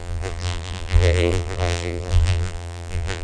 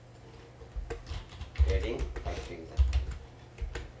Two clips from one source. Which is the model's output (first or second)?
first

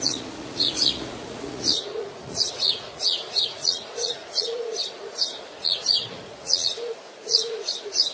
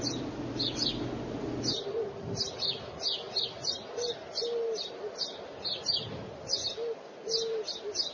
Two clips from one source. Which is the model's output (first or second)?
first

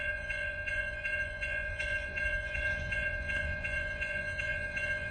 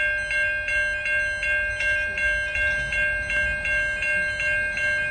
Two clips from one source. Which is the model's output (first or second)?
first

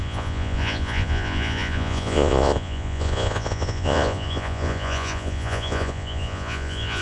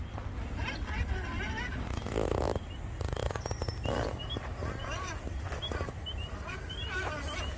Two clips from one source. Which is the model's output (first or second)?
first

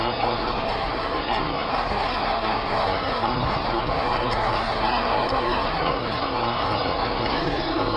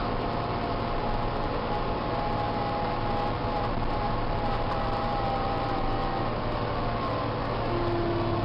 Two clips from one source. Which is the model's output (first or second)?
first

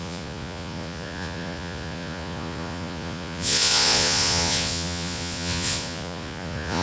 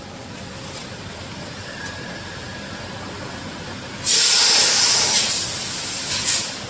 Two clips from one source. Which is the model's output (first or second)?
first